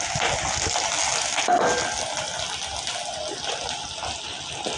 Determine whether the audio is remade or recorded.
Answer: recorded